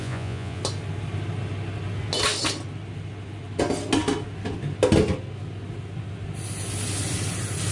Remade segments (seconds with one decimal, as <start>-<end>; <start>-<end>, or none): 0.0-0.6

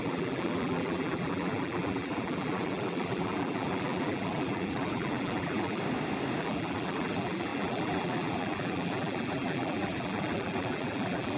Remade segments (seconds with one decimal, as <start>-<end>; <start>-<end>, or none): 0.0-5.8; 6.4-11.4